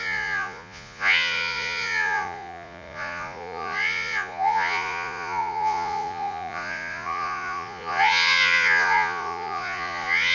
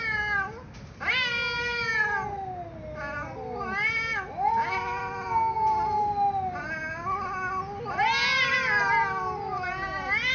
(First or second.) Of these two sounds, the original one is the second